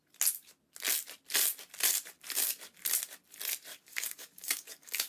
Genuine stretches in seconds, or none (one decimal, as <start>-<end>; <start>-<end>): 0.0-3.7